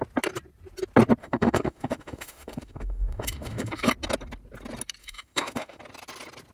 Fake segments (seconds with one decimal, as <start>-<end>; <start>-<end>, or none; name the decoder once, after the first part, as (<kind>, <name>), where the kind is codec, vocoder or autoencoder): 1.2-3.9 (autoencoder, DAC-VAE); 5.0-5.8